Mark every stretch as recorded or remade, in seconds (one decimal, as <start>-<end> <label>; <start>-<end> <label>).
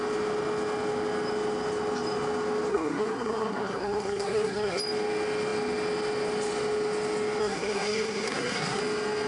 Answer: 0.0-2.7 recorded; 2.7-4.8 remade; 4.8-7.4 recorded; 7.4-8.8 remade; 8.8-9.3 recorded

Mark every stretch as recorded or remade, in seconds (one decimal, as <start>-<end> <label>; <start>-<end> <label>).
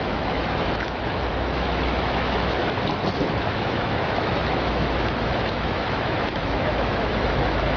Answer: 0.0-2.6 remade; 2.6-3.5 recorded; 3.5-7.8 remade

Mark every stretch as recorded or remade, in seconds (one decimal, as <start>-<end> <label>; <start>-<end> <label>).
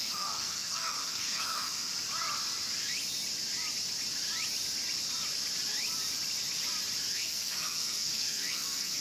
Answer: 0.0-1.9 remade; 1.9-7.1 recorded; 7.1-9.0 remade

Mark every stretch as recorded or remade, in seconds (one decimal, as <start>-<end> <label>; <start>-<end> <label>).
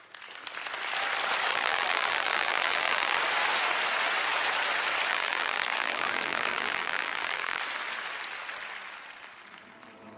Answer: 0.0-1.5 recorded; 1.5-3.2 remade; 3.2-5.1 recorded; 5.1-7.6 remade; 7.6-10.2 recorded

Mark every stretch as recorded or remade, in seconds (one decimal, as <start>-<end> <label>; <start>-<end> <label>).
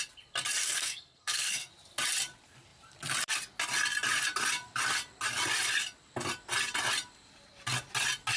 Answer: 0.0-0.6 recorded; 0.6-1.7 remade; 1.7-8.4 recorded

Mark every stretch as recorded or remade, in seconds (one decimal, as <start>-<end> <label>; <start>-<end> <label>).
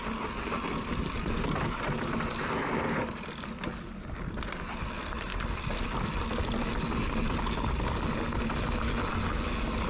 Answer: 0.0-9.9 recorded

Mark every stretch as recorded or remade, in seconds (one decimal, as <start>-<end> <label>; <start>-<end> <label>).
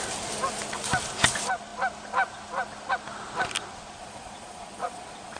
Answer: 0.0-4.0 recorded; 4.0-5.4 remade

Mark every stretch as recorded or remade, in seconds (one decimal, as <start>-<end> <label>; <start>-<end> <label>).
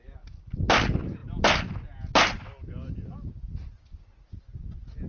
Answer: 0.0-5.1 recorded